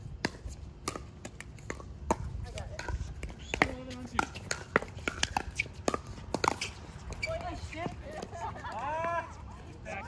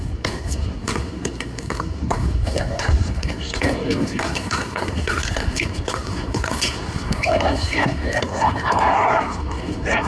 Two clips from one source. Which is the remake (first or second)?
second